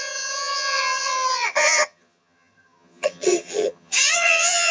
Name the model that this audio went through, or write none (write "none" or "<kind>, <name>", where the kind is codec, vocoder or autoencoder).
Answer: vocoder, HiFi-GAN